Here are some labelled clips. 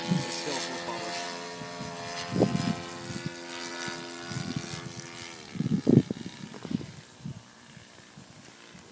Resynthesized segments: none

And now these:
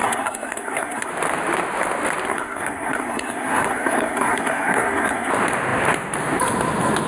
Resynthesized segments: 0.0-1.1 (codec, SNAC); 2.3-5.3

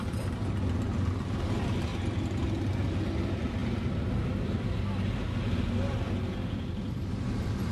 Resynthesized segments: none

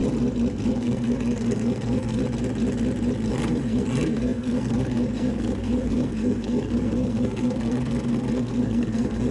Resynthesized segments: 0.7-2.2 (codec, SNAC); 3.3-9.3